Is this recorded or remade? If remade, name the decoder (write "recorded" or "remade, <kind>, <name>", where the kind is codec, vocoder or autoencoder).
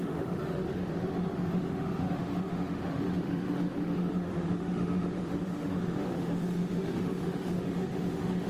remade, autoencoder, DAC-VAE